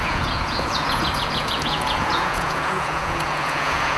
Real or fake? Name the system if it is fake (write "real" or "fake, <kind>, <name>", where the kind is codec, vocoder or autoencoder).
fake, vocoder, Vocos